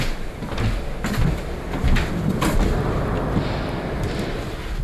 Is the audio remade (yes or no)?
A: no